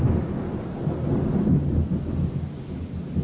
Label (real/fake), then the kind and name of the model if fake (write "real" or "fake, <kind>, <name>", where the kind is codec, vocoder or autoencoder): real